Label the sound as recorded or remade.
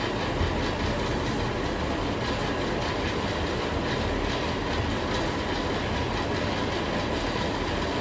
recorded